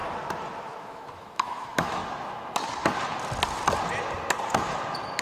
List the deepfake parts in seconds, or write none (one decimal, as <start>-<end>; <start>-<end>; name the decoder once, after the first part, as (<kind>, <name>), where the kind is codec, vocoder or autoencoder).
0.8-2.0 (autoencoder, DAC-VAE)

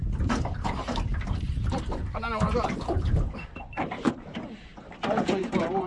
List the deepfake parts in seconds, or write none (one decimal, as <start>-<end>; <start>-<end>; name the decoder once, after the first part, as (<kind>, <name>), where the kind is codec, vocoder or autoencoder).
0.0-2.0 (vocoder, BigVGAN v2); 2.6-4.7; 5.4-5.9

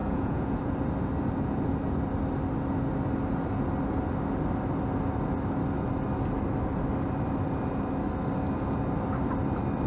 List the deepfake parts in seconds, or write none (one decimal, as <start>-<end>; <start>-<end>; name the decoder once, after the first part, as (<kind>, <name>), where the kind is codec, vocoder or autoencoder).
0.0-0.7 (vocoder, Vocos)

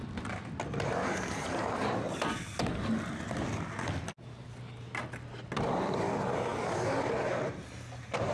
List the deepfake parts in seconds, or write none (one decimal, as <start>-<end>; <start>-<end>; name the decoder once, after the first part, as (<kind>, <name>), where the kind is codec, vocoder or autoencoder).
none

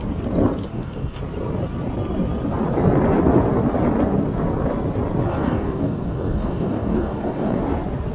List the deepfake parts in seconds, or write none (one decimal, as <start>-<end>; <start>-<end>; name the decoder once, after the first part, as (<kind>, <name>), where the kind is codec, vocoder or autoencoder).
0.7-1.2 (codec, DAC); 5.3-7.6

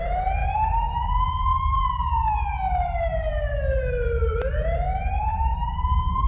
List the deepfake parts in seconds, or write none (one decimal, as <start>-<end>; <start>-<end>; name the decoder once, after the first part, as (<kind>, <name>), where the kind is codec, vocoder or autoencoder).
5.3-6.3 (vocoder, BigVGAN v2)